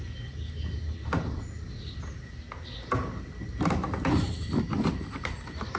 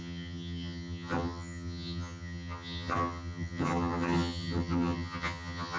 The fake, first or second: second